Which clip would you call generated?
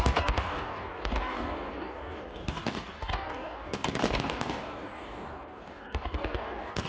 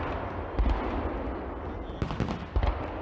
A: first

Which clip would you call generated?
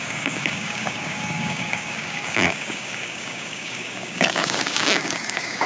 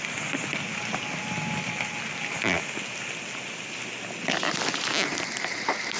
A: first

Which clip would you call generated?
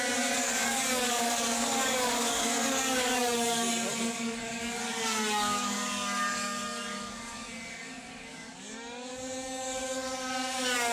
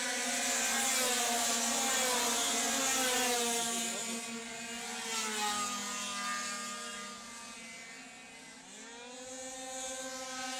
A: first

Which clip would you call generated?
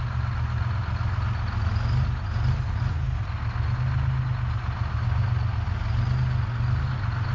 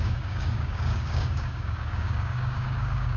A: second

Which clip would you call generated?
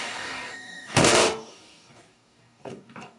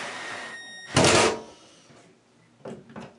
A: first